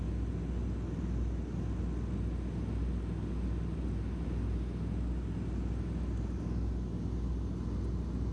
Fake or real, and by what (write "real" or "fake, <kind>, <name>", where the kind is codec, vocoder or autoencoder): real